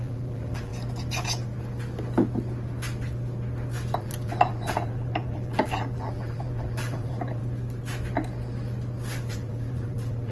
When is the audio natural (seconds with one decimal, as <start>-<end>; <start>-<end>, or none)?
0.7-4.0; 7.4-9.3